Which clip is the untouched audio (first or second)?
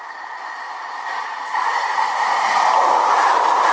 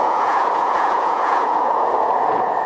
first